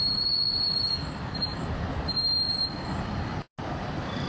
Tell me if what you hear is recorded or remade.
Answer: recorded